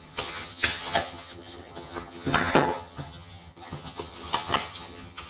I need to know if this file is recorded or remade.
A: remade